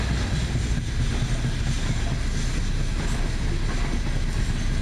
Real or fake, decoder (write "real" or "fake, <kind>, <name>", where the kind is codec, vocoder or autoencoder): real